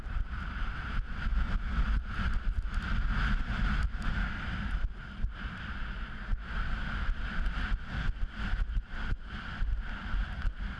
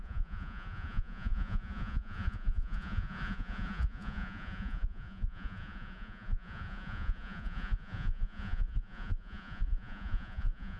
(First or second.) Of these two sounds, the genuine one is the first